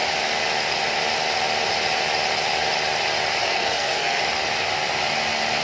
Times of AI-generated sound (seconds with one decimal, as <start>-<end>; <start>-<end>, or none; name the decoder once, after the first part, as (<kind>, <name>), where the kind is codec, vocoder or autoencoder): 3.4-4.2 (codec, SNAC)